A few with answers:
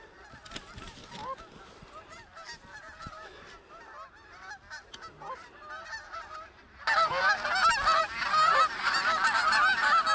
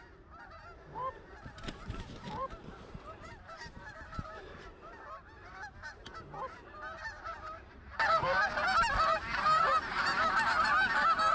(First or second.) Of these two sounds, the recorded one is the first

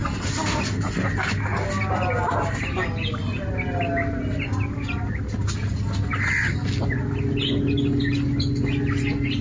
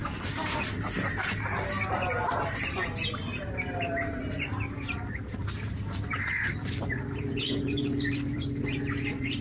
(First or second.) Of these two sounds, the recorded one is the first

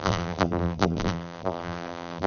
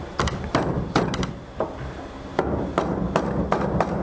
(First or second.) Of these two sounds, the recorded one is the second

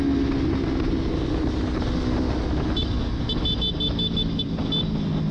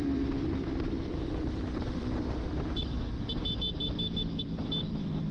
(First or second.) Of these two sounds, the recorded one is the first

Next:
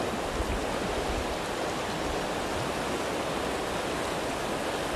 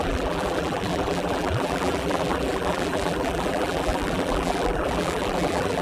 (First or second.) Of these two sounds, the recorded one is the first